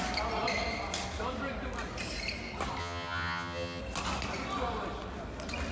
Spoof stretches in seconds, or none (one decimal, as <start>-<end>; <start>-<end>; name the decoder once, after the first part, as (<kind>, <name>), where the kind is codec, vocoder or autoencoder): 2.8-3.8 (vocoder, HiFi-GAN)

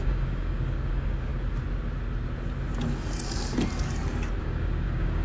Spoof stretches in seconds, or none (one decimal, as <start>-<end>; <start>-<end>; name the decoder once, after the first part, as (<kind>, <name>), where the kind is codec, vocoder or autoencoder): 0.0-1.3 (codec, DAC); 4.4-5.2